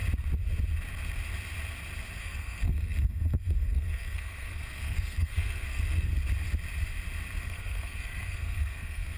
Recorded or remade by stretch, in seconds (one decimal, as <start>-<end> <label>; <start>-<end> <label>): 0.0-2.2 recorded; 2.2-6.1 remade; 6.1-7.4 recorded; 7.4-9.2 remade